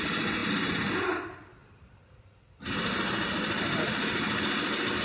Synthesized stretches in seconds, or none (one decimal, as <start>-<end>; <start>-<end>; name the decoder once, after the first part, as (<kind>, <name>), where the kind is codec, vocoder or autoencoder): none